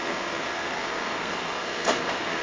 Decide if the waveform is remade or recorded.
remade